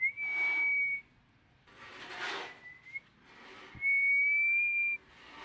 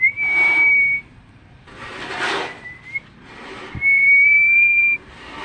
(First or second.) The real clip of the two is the first